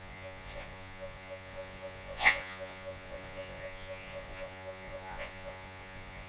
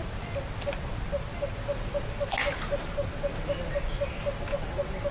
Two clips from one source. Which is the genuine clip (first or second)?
second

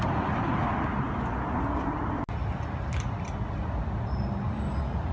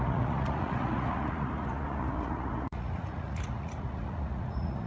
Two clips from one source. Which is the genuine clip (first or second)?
first